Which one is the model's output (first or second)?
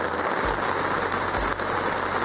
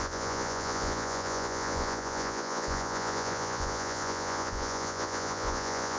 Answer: second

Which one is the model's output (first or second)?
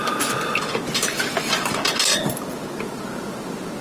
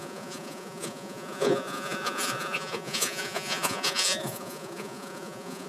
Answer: second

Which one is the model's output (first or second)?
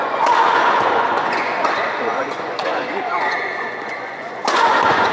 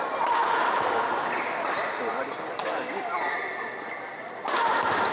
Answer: first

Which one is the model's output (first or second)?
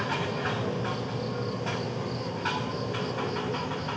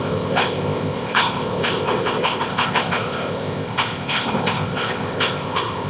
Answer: second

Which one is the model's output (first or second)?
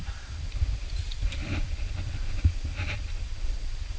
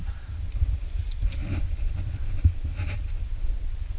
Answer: first